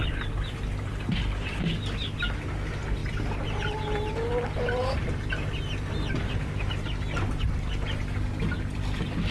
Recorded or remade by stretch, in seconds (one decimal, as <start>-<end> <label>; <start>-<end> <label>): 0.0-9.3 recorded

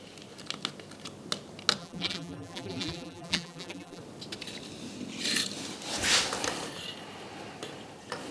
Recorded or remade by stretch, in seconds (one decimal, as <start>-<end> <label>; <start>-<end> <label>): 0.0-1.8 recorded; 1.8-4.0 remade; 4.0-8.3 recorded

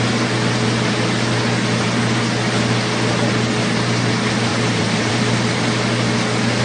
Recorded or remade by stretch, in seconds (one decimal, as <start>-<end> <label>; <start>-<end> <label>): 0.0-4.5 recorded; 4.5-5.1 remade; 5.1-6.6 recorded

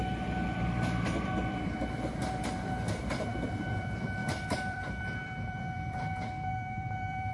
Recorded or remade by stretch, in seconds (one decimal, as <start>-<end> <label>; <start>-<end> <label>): 0.0-7.3 remade